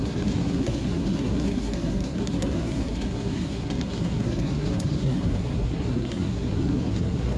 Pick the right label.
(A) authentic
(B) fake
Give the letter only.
B